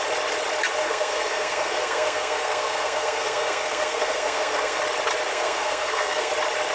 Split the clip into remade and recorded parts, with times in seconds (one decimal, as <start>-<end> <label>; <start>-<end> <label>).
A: 0.0-0.8 recorded; 0.8-4.8 remade; 4.8-5.3 recorded; 5.3-6.3 remade; 6.3-6.7 recorded